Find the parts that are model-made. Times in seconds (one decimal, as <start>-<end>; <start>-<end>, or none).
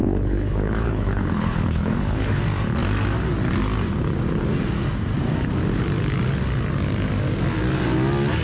0.0-2.4